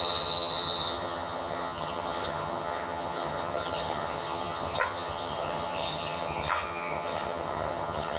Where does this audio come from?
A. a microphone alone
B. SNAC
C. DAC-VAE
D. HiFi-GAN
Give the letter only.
D